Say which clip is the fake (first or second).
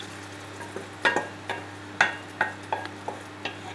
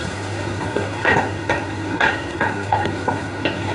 second